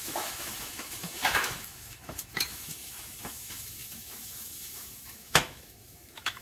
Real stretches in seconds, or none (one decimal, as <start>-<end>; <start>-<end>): none